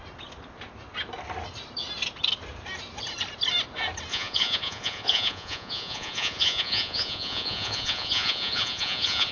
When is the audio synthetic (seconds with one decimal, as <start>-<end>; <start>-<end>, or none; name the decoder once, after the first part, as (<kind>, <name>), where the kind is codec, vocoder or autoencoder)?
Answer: 4.1-9.3 (vocoder, Vocos)